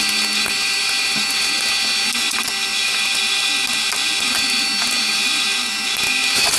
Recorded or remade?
recorded